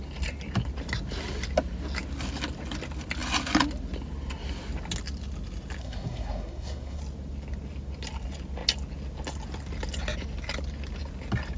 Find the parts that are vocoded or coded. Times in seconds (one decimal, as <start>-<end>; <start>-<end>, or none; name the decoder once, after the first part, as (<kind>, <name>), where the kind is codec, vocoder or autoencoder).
5.8-7.0 (codec, SNAC)

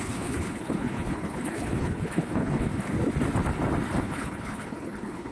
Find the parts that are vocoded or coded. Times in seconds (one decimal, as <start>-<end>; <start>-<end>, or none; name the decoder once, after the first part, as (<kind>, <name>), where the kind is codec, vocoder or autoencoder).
0.0-2.7 (codec, HILCodec); 4.0-5.3